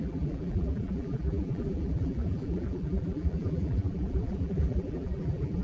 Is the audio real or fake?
fake